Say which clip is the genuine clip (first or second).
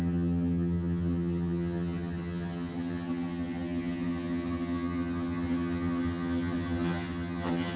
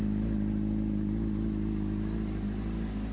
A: second